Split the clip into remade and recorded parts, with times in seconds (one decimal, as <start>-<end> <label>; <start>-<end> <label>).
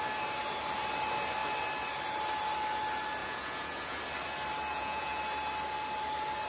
0.0-3.2 recorded; 3.2-4.0 remade; 4.0-4.7 recorded; 4.7-5.2 remade; 5.2-6.5 recorded